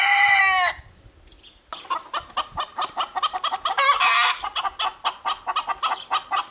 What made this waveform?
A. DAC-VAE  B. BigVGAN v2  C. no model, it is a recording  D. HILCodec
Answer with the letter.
C